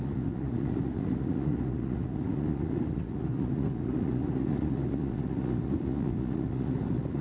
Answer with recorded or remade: remade